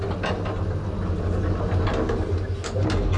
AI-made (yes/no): no